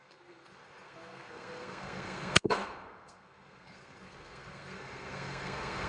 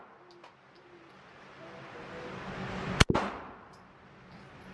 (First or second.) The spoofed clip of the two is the first